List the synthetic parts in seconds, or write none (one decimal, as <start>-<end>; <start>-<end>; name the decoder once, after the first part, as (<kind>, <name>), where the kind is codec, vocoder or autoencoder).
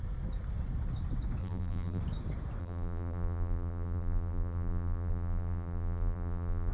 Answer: 1.4-2.0 (vocoder, BigVGAN v2); 2.6-6.7